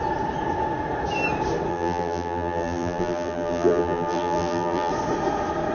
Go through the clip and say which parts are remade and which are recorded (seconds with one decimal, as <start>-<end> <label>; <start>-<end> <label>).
0.0-1.7 recorded; 1.7-4.9 remade; 4.9-5.7 recorded